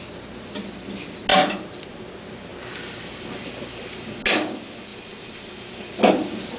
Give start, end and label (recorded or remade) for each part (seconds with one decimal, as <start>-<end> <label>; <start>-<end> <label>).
0.0-1.3 recorded; 1.3-2.0 remade; 2.0-4.9 recorded; 4.9-5.7 remade; 5.7-6.6 recorded